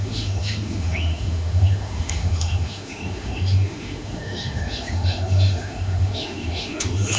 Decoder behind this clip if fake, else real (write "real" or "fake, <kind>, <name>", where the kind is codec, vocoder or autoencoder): fake, autoencoder, DAC-VAE